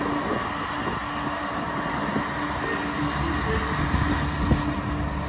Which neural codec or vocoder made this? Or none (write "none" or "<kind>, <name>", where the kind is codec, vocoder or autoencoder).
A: none